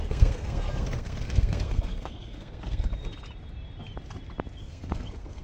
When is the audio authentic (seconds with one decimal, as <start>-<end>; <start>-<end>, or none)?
2.9-4.6